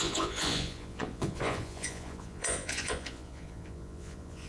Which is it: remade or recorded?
remade